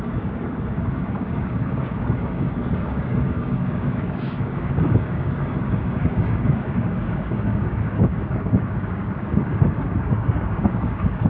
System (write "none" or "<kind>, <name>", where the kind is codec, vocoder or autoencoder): codec, DAC